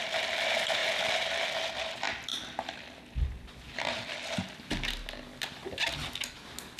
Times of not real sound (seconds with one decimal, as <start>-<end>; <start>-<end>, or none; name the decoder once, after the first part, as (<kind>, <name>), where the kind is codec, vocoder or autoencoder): 0.8-1.5 (vocoder, BigVGAN v2); 2.3-3.1